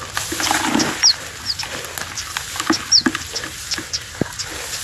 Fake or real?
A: real